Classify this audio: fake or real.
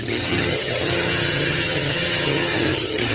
fake